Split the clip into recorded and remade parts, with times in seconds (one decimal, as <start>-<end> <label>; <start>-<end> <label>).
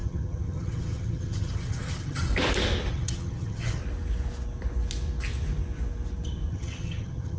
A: 0.0-2.3 remade; 2.3-2.9 recorded; 2.9-3.8 remade; 3.8-6.5 recorded; 6.5-7.4 remade